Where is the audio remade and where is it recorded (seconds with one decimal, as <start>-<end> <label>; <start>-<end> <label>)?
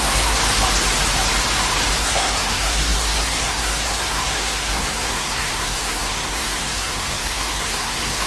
0.0-0.4 remade; 0.4-2.0 recorded; 2.0-8.3 remade